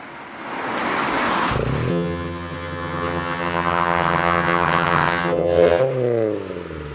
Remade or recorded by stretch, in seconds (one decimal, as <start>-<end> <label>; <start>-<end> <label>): 0.0-1.9 recorded; 1.9-5.8 remade; 5.8-6.9 recorded